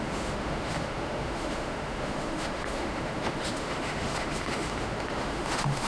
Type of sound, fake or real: fake